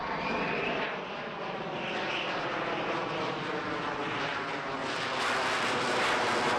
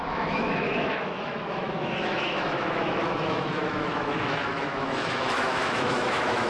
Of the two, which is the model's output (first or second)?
second